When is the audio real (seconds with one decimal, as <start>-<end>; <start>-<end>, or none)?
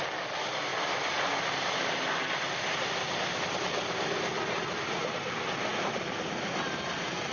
0.0-7.3